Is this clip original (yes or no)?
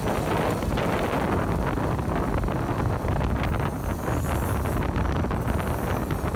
yes